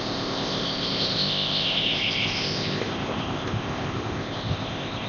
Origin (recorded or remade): remade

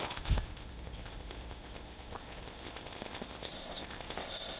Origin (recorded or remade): remade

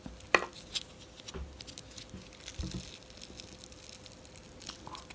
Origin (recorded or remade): recorded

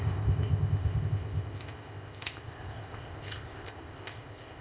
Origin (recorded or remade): remade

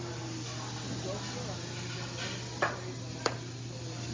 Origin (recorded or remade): recorded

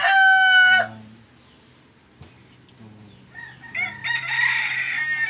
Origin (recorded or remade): recorded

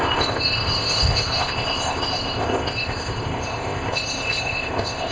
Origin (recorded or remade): remade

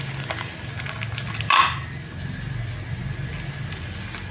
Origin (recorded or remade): recorded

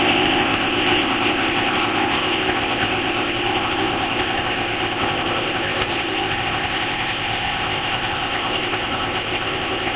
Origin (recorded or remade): remade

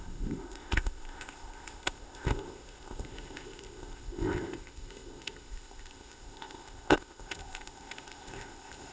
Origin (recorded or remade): remade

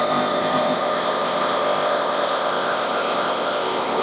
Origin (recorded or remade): remade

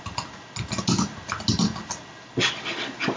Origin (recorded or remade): recorded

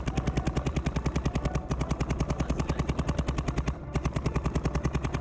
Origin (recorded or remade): recorded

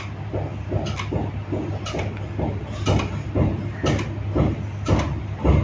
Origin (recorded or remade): recorded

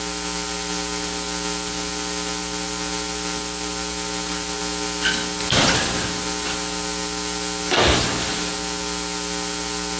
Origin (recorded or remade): recorded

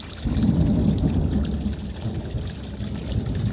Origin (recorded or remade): recorded